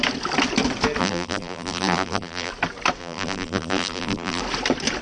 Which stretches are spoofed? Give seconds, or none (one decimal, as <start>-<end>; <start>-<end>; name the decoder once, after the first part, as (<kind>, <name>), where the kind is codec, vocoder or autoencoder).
1.0-2.5 (vocoder, BigVGAN v2); 3.0-4.4